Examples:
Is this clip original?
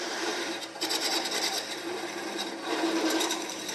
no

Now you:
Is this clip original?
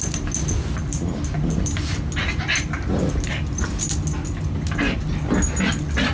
yes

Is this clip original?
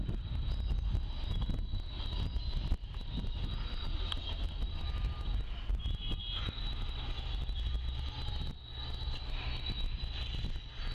yes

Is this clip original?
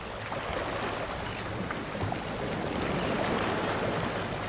yes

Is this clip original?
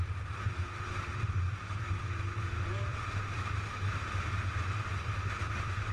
no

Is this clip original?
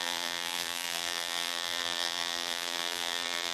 no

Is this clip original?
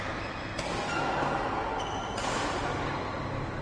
yes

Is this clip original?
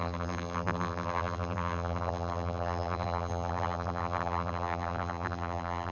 no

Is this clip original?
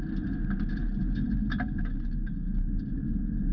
yes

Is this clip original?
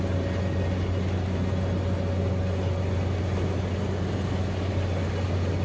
yes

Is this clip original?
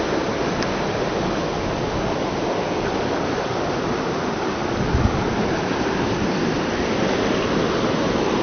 yes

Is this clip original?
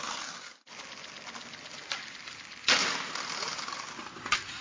yes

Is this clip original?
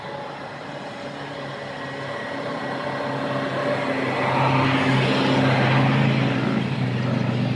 yes